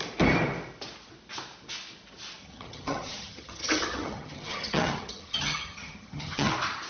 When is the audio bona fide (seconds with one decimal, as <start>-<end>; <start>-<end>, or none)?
0.0-2.4; 6.5-6.9